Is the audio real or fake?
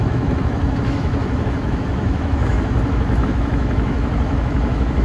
fake